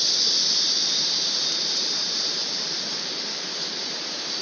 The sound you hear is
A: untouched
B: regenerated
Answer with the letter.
B